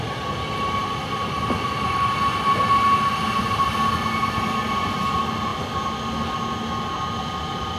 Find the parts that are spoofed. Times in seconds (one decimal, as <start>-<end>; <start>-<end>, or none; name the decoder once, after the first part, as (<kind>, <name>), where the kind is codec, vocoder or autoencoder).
none